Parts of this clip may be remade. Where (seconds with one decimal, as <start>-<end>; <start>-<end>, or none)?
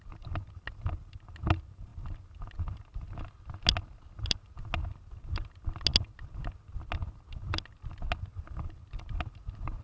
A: none